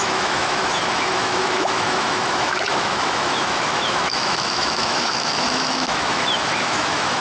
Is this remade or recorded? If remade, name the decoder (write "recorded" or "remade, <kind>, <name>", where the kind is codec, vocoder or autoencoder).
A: remade, autoencoder, DAC-VAE